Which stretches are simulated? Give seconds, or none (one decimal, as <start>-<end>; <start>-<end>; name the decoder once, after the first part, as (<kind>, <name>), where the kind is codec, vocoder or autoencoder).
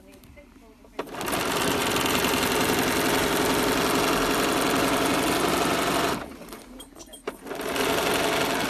none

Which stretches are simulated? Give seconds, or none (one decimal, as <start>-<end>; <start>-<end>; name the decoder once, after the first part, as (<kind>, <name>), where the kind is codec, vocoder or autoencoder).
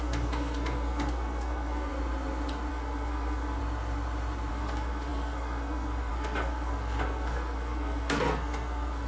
0.0-1.9 (codec, SNAC); 2.7-3.6; 4.5-9.1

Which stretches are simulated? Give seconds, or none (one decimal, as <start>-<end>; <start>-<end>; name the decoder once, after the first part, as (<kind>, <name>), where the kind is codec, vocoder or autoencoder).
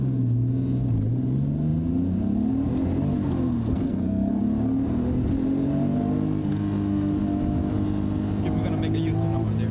3.7-4.4 (codec, SNAC)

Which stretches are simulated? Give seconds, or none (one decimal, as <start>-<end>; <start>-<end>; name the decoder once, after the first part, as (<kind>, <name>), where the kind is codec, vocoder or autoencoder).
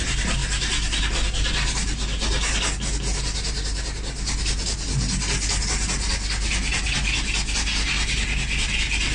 none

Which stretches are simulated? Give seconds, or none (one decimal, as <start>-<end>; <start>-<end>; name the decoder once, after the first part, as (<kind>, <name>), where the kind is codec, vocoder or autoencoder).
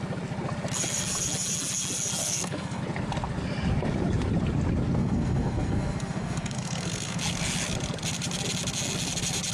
2.2-2.8 (codec, SNAC); 5.0-7.2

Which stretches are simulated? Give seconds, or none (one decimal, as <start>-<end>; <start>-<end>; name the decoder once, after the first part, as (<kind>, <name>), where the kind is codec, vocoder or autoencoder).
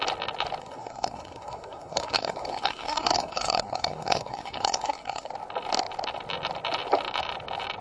0.6-5.3 (codec, SNAC)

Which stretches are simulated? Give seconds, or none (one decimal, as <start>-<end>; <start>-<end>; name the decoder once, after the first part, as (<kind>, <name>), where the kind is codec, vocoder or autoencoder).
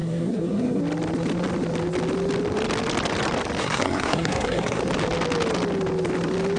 0.0-0.8 (codec, SNAC); 3.6-4.8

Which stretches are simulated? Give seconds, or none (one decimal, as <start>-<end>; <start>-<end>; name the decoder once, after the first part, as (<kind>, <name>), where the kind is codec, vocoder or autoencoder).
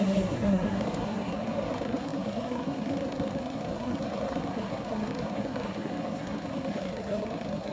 0.0-7.7 (codec, SNAC)